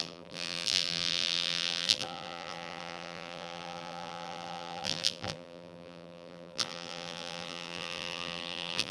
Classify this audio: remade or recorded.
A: remade